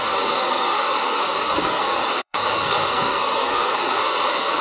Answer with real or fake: fake